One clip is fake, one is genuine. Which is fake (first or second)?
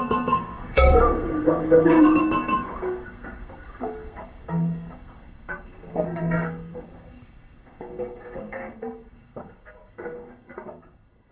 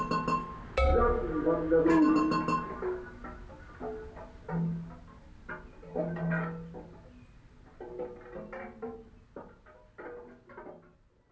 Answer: first